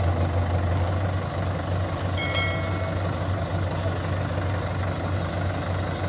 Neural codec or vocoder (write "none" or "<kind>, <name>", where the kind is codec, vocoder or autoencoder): none